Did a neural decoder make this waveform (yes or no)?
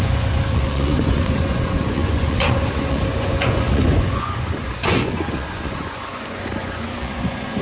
yes